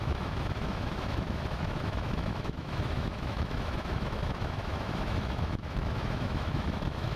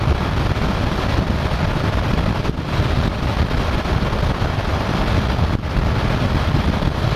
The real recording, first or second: second